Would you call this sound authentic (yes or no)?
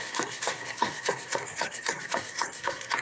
no